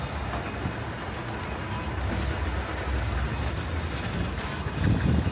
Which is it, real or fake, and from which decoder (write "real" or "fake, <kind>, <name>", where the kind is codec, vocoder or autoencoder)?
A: real